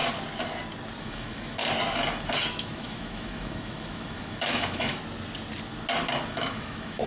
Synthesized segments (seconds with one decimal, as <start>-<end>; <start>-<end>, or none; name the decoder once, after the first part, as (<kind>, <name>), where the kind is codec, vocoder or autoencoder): 1.0-1.6 (autoencoder, DAC-VAE); 2.5-5.0; 6.3-7.1